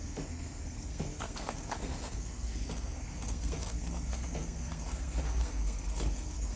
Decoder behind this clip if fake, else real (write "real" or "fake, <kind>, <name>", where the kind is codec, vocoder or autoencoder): fake, codec, SNAC